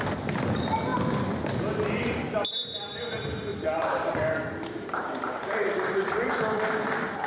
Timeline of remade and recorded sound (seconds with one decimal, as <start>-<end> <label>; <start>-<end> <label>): 0.0-3.5 recorded; 3.5-6.3 remade; 6.3-7.3 recorded